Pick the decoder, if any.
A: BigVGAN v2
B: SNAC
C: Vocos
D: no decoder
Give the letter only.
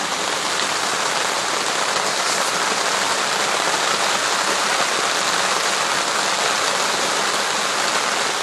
D